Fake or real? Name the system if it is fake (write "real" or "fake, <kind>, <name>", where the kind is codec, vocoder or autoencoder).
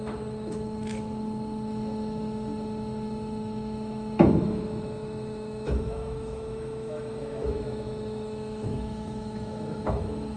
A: fake, autoencoder, DAC-VAE